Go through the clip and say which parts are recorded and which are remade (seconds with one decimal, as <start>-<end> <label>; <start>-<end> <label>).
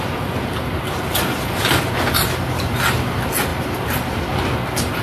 0.0-5.0 recorded